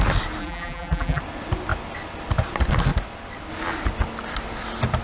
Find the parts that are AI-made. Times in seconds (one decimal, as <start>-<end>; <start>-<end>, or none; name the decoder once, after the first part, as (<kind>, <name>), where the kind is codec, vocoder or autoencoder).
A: 0.4-1.2 (vocoder, BigVGAN v2)